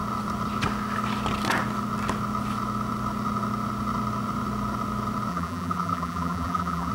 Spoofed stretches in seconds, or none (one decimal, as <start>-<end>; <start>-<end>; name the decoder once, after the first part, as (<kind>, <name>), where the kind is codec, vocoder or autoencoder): 5.3-6.9 (vocoder, BigVGAN v2)